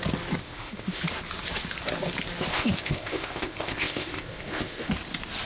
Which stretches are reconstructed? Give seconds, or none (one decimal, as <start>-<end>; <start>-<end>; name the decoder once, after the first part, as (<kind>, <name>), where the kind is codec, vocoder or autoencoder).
0.4-1.0 (codec, ZipCodec); 2.5-4.9